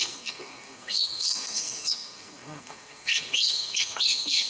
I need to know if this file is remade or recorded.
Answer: remade